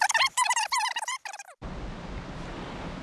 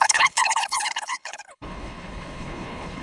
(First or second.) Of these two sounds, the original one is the first